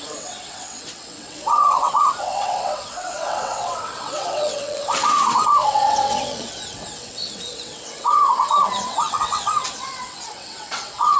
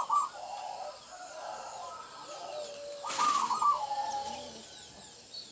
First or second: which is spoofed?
first